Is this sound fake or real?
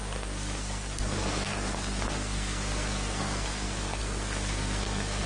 fake